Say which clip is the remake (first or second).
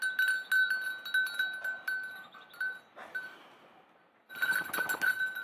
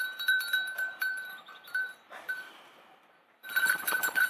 second